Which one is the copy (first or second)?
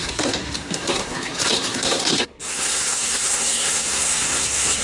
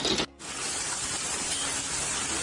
first